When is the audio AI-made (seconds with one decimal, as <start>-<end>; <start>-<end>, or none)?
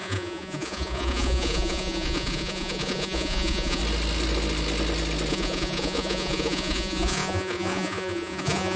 0.0-3.8; 5.3-8.8